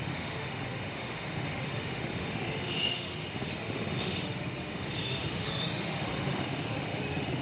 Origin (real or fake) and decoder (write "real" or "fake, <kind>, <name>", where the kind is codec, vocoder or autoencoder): fake, autoencoder, DAC-VAE